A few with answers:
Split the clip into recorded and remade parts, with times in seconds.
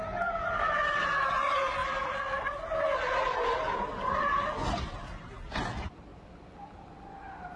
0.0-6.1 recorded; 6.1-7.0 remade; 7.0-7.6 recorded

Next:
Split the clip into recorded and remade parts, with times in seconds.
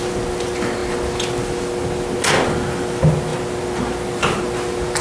0.0-5.0 recorded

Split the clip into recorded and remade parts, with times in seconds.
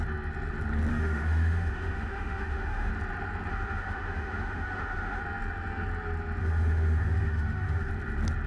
0.0-0.9 recorded; 0.9-2.9 remade; 2.9-3.5 recorded; 3.5-5.2 remade; 5.2-6.4 recorded; 6.4-7.9 remade; 7.9-8.5 recorded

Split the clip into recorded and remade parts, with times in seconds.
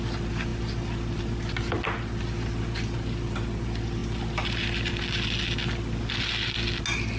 0.0-7.2 recorded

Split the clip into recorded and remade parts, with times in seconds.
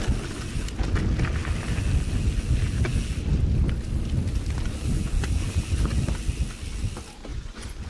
0.0-7.3 recorded; 7.3-7.9 remade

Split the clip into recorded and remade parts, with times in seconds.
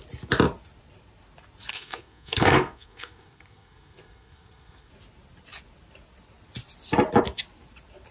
0.0-1.7 recorded; 1.7-4.9 remade; 4.9-8.1 recorded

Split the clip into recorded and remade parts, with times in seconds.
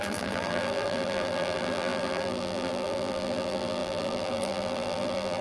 0.0-5.4 remade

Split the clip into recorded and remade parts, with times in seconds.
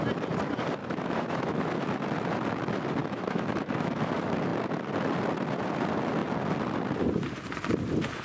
0.0-0.8 recorded; 0.8-1.6 remade; 1.6-3.0 recorded; 3.0-4.1 remade; 4.1-8.2 recorded